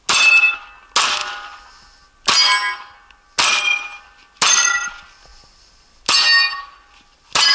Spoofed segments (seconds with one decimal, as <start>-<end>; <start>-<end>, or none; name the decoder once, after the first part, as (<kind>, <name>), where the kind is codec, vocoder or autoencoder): none